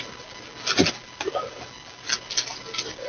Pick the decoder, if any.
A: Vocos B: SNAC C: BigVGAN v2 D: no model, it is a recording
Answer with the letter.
D